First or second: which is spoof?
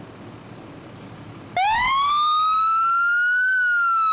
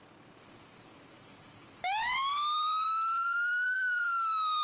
second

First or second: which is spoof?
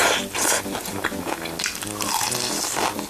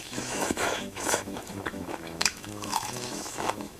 second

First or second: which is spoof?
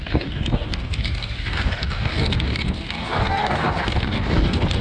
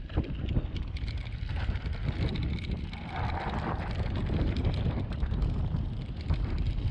first